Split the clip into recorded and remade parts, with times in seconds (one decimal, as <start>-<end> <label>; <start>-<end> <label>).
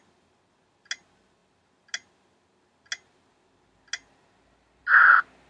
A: 0.0-5.5 recorded